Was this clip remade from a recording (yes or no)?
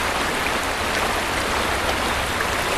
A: no